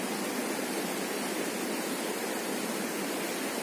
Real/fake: real